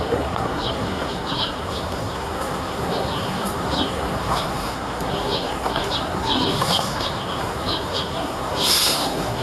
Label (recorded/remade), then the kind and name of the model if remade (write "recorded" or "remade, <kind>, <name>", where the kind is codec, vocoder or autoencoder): remade, codec, SNAC